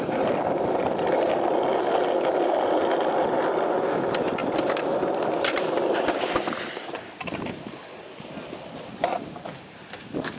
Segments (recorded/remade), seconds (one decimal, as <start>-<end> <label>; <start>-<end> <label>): 0.0-10.4 recorded